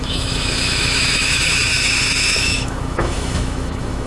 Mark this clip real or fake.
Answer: fake